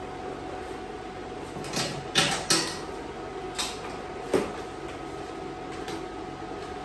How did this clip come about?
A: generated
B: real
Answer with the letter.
B